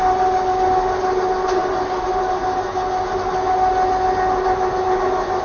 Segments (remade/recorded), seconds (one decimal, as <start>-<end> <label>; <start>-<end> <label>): 0.0-5.4 recorded